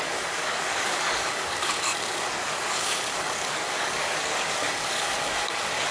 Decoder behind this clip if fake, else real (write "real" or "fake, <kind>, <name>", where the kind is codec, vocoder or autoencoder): fake, codec, DAC